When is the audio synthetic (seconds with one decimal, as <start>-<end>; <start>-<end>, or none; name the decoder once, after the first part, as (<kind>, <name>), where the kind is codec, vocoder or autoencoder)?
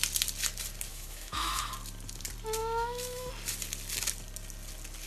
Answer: 0.9-1.7 (autoencoder, DAC-VAE); 2.6-3.3